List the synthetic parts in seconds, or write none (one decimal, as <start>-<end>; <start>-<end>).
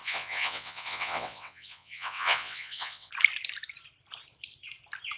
0.0-3.1